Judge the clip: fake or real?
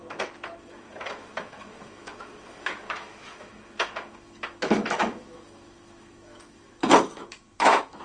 fake